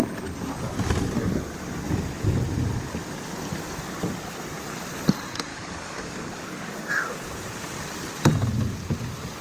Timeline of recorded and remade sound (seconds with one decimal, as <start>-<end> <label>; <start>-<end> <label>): 0.0-5.5 recorded; 5.5-6.9 remade; 6.9-9.4 recorded